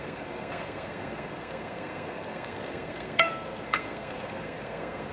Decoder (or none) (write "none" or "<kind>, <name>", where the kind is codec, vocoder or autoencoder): codec, SNAC